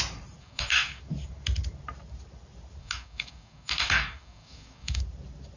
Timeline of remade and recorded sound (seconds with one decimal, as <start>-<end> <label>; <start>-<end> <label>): 0.0-0.4 recorded; 0.4-1.0 remade; 1.0-2.8 recorded; 2.8-5.0 remade; 5.0-5.6 recorded